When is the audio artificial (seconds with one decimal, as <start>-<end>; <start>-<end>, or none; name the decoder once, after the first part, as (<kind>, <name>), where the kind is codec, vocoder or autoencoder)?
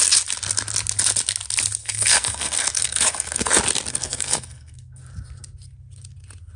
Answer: 1.8-3.5 (codec, SNAC); 3.9-5.0